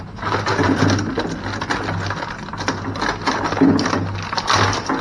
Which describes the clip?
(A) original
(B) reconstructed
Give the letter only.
A